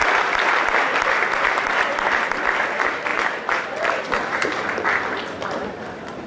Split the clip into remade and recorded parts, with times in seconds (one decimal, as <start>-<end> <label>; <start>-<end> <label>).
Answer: 0.0-1.1 recorded; 1.1-6.3 remade